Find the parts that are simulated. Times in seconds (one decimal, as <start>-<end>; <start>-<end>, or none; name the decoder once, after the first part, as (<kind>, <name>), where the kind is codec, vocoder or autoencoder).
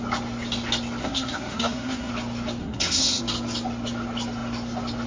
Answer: 1.0-2.1 (codec, SNAC); 2.6-3.2